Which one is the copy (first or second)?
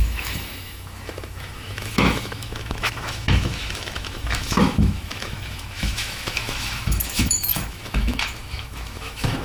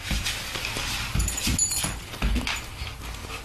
first